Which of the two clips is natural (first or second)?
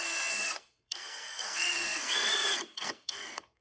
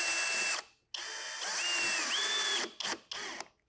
second